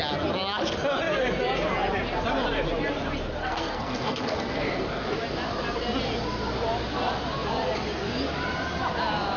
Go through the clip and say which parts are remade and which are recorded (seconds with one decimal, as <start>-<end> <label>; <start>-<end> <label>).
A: 0.0-3.4 recorded; 3.4-5.0 remade; 5.0-9.4 recorded